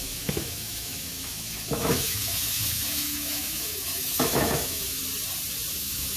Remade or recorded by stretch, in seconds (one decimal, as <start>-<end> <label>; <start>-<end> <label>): 0.0-5.0 remade; 5.0-5.8 recorded; 5.8-6.2 remade